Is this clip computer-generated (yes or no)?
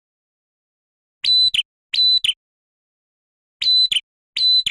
no